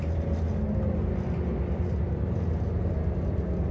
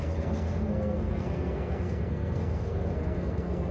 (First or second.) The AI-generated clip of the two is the second